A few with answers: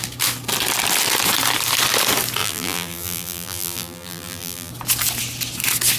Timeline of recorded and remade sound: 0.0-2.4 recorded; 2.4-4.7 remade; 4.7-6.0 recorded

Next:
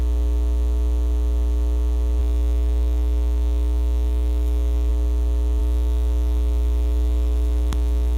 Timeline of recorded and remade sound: 0.0-2.2 recorded; 2.2-4.9 remade; 4.9-5.6 recorded; 5.6-8.2 remade

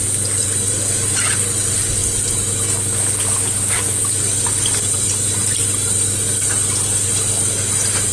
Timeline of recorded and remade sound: 0.0-8.1 recorded